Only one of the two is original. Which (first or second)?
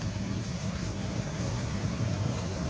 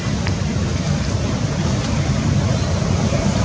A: second